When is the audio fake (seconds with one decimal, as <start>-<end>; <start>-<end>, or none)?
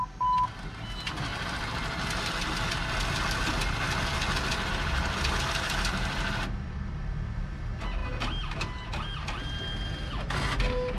none